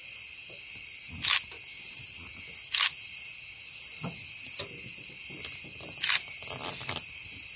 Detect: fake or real real